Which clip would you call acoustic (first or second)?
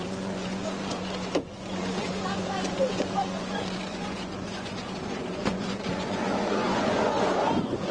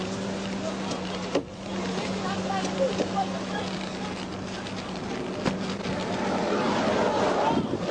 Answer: second